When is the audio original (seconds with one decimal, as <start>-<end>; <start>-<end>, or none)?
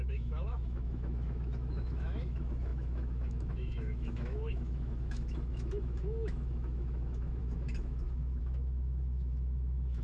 none